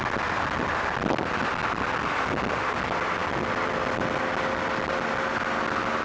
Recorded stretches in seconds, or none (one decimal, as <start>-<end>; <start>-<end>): 0.0-6.0